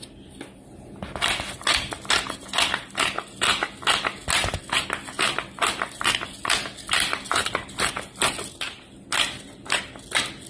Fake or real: real